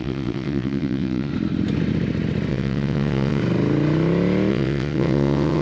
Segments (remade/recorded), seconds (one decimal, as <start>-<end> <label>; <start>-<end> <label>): 0.0-1.3 remade; 1.3-2.5 recorded; 2.5-3.4 remade; 3.4-4.5 recorded; 4.5-5.6 remade